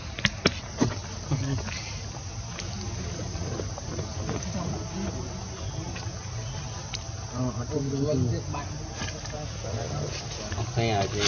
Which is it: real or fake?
real